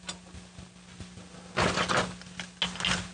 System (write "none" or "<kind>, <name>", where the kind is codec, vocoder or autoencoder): none